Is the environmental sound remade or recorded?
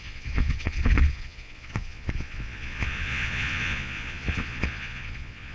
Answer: remade